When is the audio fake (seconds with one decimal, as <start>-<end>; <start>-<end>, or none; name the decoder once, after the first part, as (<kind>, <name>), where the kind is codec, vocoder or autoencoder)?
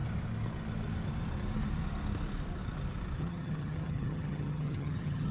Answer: 3.2-5.3 (vocoder, HiFi-GAN)